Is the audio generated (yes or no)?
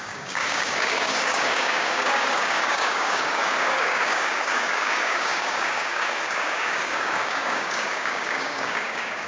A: yes